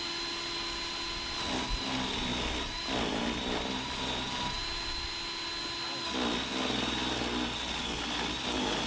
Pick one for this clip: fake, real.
real